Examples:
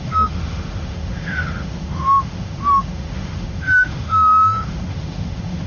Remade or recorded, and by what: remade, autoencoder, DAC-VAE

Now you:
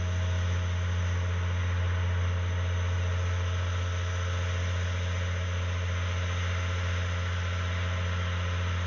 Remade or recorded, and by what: recorded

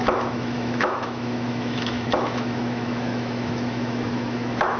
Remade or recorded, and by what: remade, autoencoder, DAC-VAE